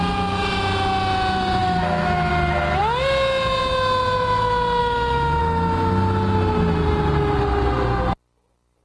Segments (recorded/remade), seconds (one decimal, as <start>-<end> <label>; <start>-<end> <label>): 0.0-1.6 recorded; 1.6-2.3 remade; 2.3-4.8 recorded; 4.8-5.4 remade; 5.4-8.8 recorded